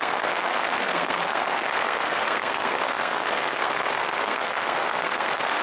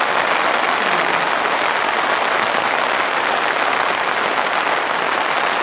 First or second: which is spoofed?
first